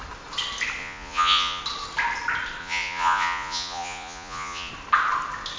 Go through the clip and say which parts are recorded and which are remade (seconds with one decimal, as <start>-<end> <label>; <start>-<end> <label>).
0.0-0.8 recorded; 0.8-1.6 remade; 1.6-2.6 recorded; 2.6-4.7 remade; 4.7-5.6 recorded